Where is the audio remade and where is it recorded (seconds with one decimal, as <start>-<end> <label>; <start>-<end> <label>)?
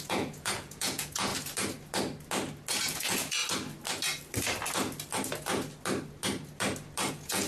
0.0-1.3 remade; 1.3-2.8 recorded; 2.8-3.4 remade; 3.4-7.1 recorded; 7.1-7.5 remade